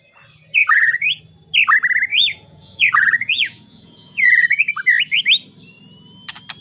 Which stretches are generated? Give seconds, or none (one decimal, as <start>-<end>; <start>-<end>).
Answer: 0.6-1.2; 2.1-4.7